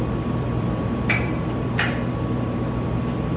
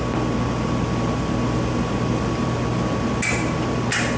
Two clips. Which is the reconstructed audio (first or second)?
first